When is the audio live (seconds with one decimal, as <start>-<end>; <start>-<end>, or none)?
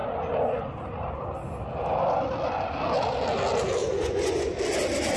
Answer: 0.0-3.8; 4.6-5.2